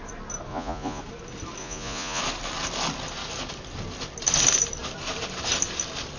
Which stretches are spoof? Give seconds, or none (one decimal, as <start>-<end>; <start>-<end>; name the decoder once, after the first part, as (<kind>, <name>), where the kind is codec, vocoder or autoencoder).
0.5-1.0 (vocoder, Vocos); 1.6-2.2

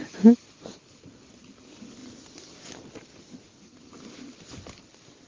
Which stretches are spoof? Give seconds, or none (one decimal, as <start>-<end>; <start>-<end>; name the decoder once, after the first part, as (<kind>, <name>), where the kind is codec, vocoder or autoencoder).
none

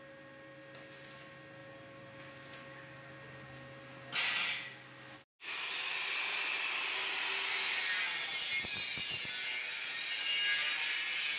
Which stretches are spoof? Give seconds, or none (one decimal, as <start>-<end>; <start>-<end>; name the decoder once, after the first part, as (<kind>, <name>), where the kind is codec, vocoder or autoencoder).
none

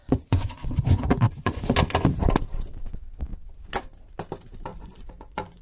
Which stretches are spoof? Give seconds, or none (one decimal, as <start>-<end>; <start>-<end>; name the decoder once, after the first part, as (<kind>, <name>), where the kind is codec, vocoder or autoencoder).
0.0-1.6 (vocoder, Vocos); 4.7-5.6

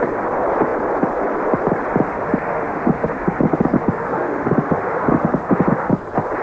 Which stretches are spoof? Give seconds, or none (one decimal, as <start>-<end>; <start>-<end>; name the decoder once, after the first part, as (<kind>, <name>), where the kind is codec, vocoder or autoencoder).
2.1-5.9 (autoencoder, DAC-VAE)